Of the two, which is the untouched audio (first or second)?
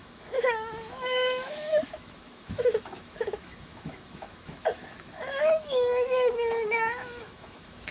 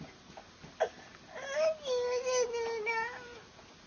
second